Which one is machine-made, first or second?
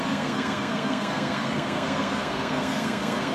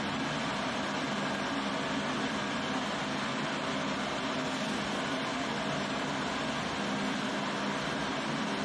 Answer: first